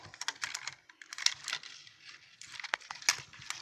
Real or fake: real